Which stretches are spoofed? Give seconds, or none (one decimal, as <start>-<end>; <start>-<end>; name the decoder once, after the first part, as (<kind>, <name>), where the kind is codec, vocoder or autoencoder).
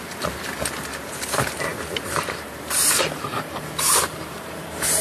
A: 1.7-5.0 (vocoder, BigVGAN v2)